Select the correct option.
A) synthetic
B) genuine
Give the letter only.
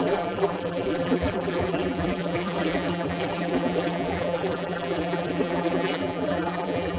A